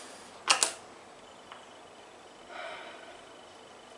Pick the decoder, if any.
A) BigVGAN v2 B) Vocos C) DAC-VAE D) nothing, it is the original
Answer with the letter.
D